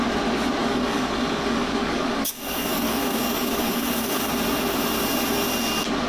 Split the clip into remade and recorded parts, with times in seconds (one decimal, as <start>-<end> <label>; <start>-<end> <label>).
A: 0.0-0.6 recorded; 0.6-4.3 remade; 4.3-6.1 recorded